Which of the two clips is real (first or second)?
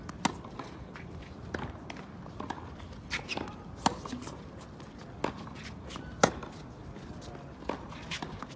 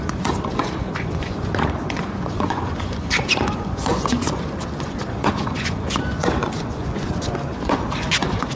first